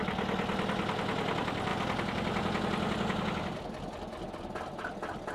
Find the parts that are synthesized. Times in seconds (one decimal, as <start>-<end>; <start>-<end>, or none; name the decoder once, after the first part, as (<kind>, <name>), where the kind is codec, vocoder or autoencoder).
none